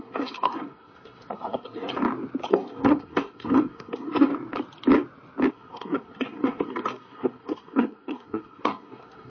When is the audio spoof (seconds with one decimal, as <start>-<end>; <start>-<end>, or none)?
0.0-1.9; 2.5-4.3; 5.5-9.3